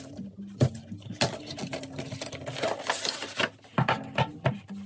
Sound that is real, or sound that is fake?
real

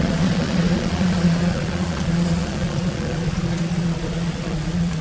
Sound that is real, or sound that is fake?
fake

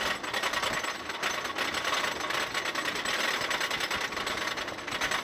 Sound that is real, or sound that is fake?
real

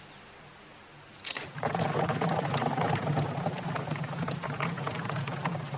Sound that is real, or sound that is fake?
real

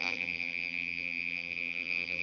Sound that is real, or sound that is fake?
fake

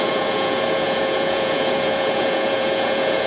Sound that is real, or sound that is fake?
fake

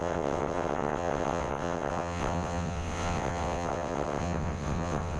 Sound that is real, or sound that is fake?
fake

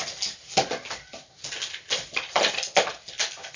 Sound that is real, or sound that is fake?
real